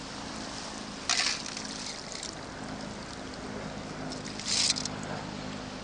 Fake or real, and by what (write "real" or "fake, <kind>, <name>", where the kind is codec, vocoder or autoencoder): real